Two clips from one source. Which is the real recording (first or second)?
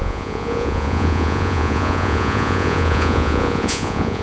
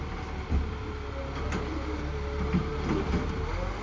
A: second